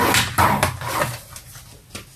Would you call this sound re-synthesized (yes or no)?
no